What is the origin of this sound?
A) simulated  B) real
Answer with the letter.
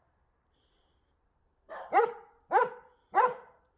B